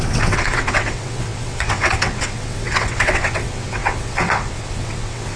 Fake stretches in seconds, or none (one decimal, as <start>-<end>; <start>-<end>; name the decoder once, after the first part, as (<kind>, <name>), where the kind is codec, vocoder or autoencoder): 0.0-5.4 (vocoder, WaveNeXt)